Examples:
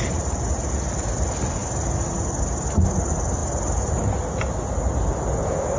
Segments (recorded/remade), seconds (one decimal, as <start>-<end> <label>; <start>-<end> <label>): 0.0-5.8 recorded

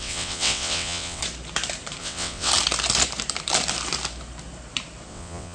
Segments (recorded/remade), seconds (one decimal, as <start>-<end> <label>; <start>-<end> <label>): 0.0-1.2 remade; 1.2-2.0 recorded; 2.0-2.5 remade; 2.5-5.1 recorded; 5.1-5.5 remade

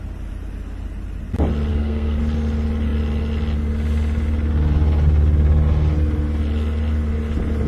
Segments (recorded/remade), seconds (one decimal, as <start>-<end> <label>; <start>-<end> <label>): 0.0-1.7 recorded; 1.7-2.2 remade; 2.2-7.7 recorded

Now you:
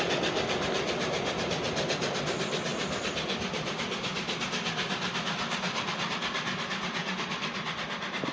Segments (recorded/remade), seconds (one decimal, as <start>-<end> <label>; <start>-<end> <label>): 0.0-8.3 recorded

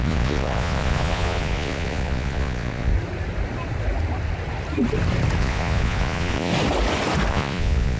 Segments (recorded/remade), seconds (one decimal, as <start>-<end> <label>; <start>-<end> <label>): 0.0-2.9 remade; 2.9-5.4 recorded; 5.4-6.5 remade; 6.5-7.3 recorded; 7.3-8.0 remade

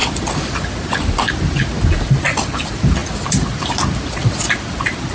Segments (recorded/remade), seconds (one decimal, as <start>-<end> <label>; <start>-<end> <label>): 0.0-5.1 recorded

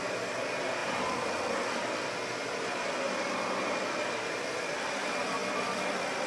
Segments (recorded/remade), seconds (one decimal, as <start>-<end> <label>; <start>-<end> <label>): 0.0-6.3 recorded

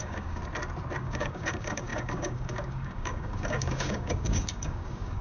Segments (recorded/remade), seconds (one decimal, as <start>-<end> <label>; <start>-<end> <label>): 0.0-0.4 remade; 0.4-1.0 recorded; 1.0-5.2 remade